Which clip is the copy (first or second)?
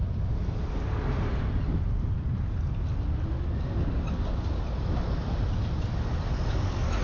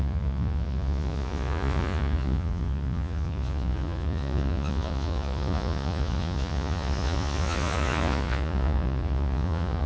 second